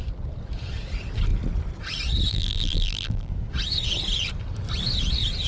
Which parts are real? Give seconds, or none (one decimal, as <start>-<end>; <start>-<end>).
0.0-2.3; 3.3-5.5